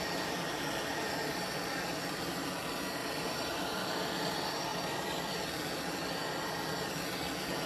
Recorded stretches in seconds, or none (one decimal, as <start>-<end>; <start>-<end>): 0.0-0.9; 2.3-3.0; 3.9-4.7; 5.4-7.7